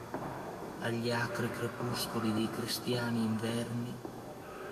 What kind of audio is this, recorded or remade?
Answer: remade